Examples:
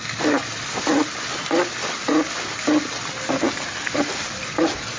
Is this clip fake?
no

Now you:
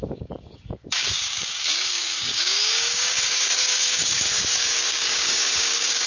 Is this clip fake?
yes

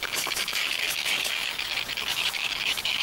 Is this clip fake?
yes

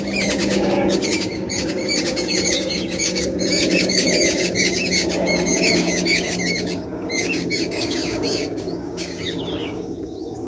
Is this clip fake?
yes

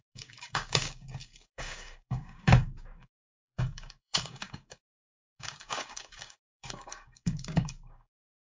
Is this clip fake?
yes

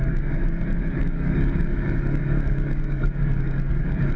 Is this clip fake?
yes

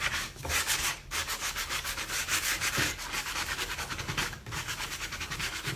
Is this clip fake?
yes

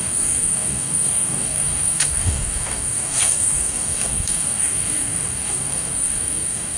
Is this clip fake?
yes